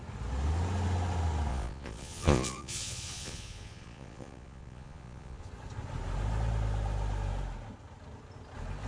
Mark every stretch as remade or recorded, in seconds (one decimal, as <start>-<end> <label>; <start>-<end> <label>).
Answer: 0.0-1.5 recorded; 1.5-5.5 remade; 5.5-8.9 recorded